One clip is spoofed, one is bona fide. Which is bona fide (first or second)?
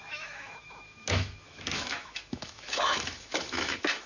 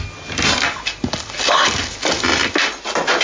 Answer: second